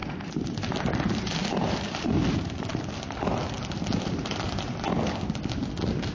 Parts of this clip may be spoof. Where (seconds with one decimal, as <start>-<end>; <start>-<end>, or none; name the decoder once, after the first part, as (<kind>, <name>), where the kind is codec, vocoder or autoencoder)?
0.0-0.9 (vocoder, BigVGAN v2); 1.4-4.5

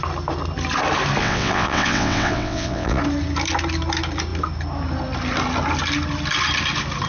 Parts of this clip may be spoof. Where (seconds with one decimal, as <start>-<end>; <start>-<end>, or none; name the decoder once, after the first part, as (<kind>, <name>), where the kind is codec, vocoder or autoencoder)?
1.2-3.0 (vocoder, WaveNeXt)

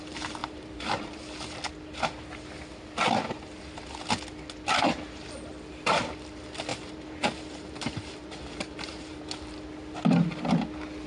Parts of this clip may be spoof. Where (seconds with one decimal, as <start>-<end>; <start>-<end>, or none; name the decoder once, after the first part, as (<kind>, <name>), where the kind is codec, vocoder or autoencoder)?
0.4-1.2 (vocoder, BigVGAN v2); 6.7-9.2

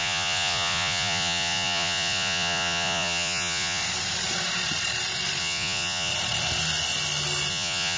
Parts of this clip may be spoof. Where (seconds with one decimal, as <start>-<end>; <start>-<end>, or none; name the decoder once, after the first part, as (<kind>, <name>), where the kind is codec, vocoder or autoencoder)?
0.0-3.8 (vocoder, Vocos); 5.4-6.1; 7.5-8.0

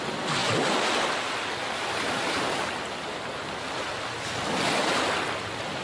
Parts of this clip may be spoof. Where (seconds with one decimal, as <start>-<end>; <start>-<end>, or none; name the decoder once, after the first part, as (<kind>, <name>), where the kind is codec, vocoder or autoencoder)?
none

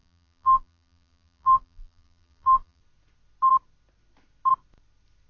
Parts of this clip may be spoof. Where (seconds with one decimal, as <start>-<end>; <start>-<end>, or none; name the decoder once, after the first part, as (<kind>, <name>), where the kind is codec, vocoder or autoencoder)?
0.0-2.8 (vocoder, BigVGAN v2)

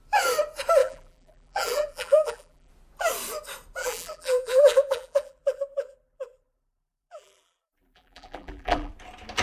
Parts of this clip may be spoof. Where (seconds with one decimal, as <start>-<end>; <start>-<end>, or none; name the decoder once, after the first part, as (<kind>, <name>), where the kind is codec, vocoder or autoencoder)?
0.8-2.7 (vocoder, BigVGAN v2); 3.8-8.9